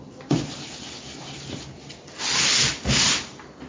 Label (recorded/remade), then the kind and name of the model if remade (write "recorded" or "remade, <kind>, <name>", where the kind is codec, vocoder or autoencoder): recorded